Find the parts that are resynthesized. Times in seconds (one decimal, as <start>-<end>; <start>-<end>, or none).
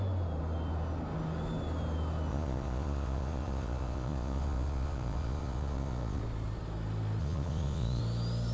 2.3-6.2; 7.2-8.0